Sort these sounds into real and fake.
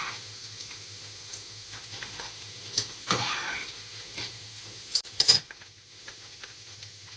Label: fake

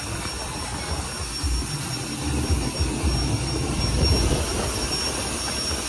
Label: real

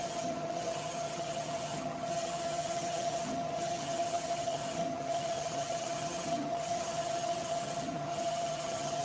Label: fake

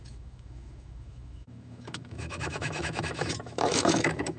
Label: fake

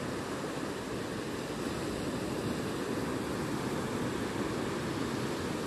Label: real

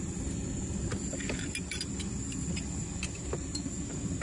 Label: real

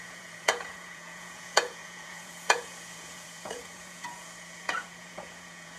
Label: fake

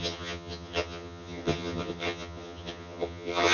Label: fake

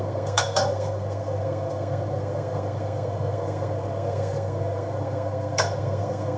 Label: fake